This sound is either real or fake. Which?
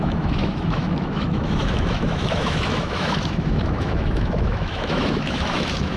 fake